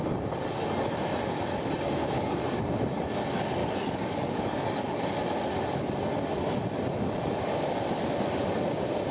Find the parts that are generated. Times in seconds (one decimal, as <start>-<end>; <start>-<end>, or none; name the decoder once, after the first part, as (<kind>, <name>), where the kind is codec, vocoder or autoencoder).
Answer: 2.0-2.6 (codec, DAC); 3.6-5.0